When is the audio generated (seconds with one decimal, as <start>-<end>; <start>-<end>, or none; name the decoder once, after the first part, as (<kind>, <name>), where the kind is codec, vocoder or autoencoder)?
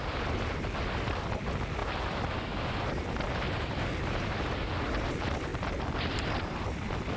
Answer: 0.0-1.8 (vocoder, BigVGAN v2); 3.5-5.5; 6.4-7.2